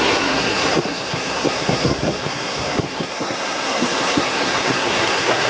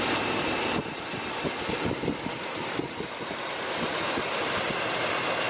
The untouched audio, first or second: second